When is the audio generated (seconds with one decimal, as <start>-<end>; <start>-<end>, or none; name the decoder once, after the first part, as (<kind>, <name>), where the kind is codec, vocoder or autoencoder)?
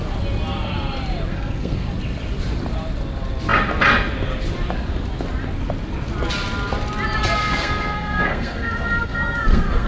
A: 1.3-1.9 (codec, SNAC); 7.4-9.9